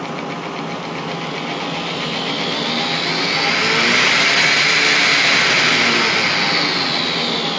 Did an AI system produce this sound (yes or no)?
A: no